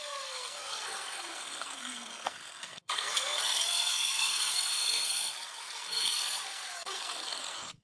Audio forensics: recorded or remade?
remade